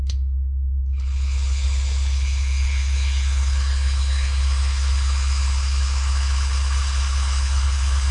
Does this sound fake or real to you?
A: fake